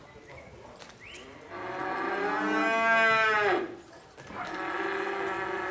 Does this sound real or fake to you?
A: real